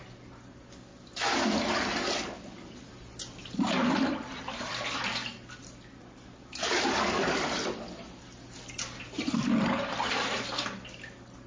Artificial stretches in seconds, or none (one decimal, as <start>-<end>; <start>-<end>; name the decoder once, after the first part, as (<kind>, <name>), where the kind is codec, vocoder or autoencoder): 3.8-4.7 (vocoder, BigVGAN v2)